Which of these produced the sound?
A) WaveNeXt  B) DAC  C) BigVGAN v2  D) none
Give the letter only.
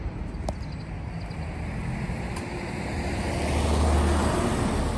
D